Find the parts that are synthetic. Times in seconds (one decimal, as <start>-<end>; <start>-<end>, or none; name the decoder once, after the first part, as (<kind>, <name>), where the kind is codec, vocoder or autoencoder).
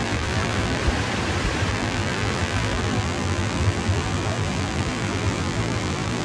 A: 0.0-0.8 (vocoder, BigVGAN v2); 1.7-6.2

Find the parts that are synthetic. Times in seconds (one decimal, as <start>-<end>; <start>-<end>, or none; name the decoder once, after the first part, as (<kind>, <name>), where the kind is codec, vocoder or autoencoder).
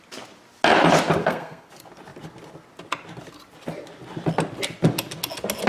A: 1.2-1.7 (codec, SNAC)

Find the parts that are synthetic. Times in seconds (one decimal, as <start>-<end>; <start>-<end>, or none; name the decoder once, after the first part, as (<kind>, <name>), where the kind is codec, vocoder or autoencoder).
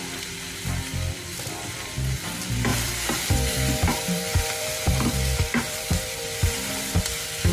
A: 0.9-1.9 (vocoder, BigVGAN v2); 2.7-7.0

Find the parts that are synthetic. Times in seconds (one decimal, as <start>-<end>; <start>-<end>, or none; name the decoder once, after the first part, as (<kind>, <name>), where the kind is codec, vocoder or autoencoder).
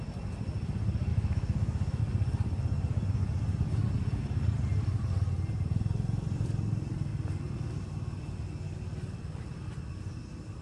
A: 1.1-2.0 (autoencoder, DAC-VAE)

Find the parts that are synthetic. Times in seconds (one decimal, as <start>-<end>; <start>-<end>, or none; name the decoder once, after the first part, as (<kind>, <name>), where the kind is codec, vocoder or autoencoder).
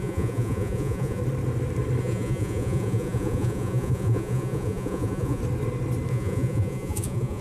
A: 0.0-1.2 (vocoder, Vocos); 2.0-5.4; 6.1-7.4